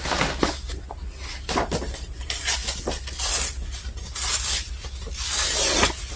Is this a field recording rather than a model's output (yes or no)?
yes